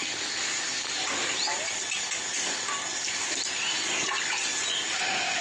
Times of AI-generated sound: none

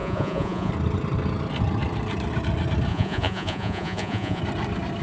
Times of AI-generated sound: 0.0-0.7 (vocoder, Vocos); 2.9-4.4

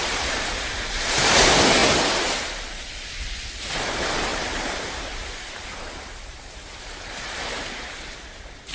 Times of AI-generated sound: 0.0-1.8 (vocoder, BigVGAN v2); 3.8-8.7

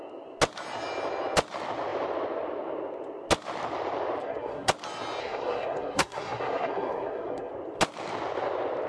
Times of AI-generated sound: 4.2-4.7 (codec, SNAC); 5.2-7.5

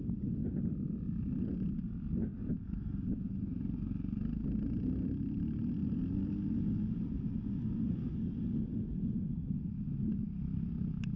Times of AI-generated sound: 2.3-3.4 (vocoder, BigVGAN v2); 5.8-6.3

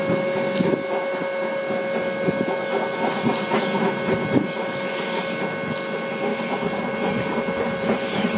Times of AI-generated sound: none

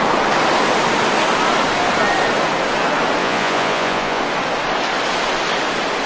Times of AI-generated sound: 3.2-4.2 (vocoder, Vocos)

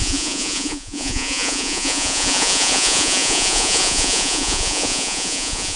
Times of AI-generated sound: 0.0-5.8 (vocoder, Vocos)